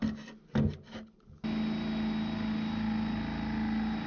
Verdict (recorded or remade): recorded